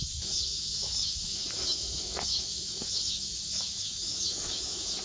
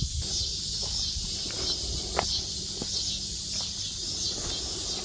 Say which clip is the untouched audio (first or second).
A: second